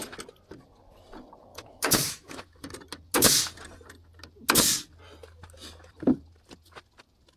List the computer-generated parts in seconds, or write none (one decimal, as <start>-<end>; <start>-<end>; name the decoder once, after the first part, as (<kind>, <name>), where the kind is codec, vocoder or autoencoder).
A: 1.5-2.6 (autoencoder, DAC-VAE)